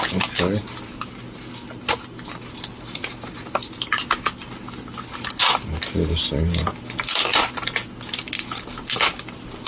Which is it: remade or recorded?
recorded